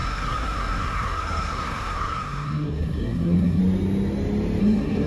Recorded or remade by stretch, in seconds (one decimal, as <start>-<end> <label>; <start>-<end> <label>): 0.0-3.6 remade; 3.6-4.6 recorded; 4.6-5.1 remade